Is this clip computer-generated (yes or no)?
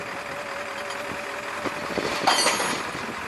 no